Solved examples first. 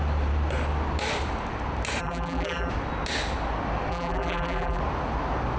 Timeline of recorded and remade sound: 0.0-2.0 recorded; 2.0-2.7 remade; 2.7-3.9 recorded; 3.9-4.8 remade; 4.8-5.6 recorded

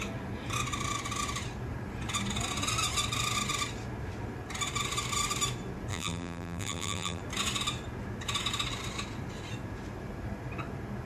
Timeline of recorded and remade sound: 0.0-5.9 recorded; 5.9-7.2 remade; 7.2-11.1 recorded

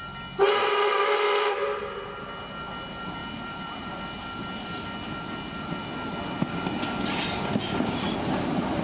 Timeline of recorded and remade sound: 0.0-3.2 recorded; 3.2-3.9 remade; 3.9-8.8 recorded

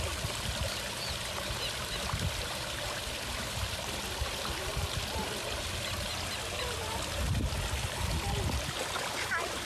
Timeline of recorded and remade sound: 0.0-4.7 remade; 4.7-8.8 recorded; 8.8-9.6 remade

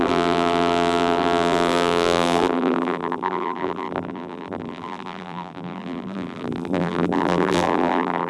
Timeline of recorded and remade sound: 0.0-8.3 remade

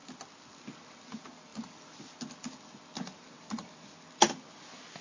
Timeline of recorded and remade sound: 0.0-5.0 recorded

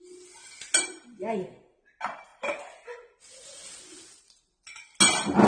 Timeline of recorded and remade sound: 0.0-5.5 recorded